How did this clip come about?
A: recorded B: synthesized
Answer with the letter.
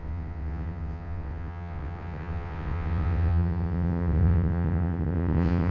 B